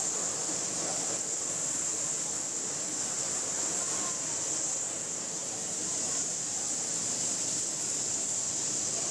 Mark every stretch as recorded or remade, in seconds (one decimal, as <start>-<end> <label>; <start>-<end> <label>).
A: 0.0-5.4 recorded; 5.4-6.6 remade; 6.6-9.1 recorded